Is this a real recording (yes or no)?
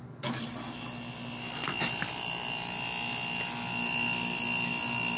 yes